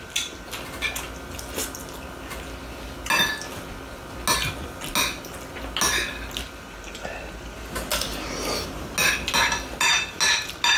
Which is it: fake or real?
real